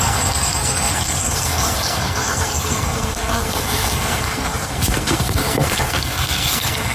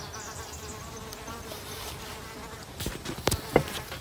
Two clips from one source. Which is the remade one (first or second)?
first